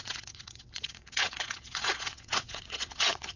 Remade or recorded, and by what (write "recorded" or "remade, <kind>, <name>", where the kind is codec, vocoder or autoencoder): remade, vocoder, WaveNeXt